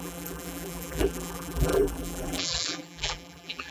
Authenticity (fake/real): fake